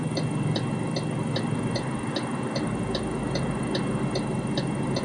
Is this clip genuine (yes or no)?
yes